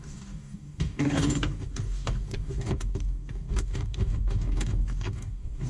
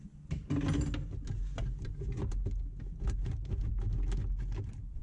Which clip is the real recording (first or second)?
second